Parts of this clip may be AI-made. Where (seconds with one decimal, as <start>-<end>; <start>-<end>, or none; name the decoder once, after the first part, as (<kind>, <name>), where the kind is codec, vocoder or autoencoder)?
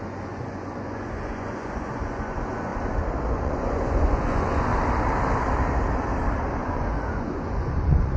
0.0-2.7 (vocoder, Vocos); 3.3-4.7; 6.6-8.2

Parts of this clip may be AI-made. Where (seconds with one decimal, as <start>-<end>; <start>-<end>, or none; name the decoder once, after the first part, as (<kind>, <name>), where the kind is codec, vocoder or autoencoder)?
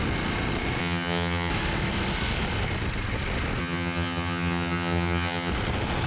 0.8-1.5 (vocoder, HiFi-GAN); 3.6-5.5